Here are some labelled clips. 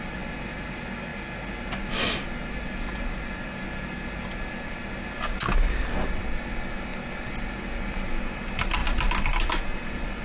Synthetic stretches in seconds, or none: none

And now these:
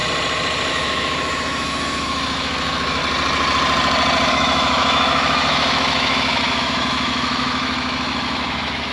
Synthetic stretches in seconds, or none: 0.7-3.0 (autoencoder, DAC-VAE); 4.3-8.9

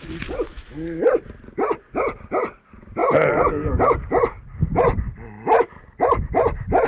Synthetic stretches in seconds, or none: 0.5-1.0 (autoencoder, DAC-VAE)